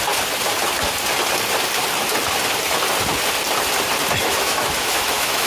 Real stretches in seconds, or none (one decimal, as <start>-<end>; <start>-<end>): 0.0-4.2

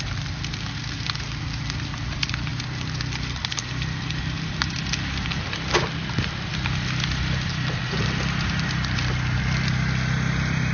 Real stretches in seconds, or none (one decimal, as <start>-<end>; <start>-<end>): 0.0-10.7

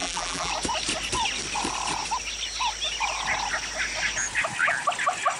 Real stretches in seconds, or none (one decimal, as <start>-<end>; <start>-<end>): 0.5-5.4